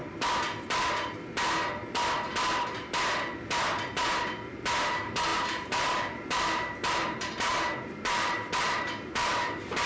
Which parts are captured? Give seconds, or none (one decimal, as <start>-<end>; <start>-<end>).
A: 0.0-5.3